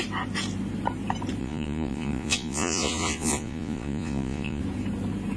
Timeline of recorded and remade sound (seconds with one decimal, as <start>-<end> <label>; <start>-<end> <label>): 0.0-1.4 recorded; 1.4-4.6 remade; 4.6-5.4 recorded